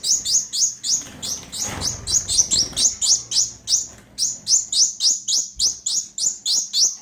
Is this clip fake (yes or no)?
no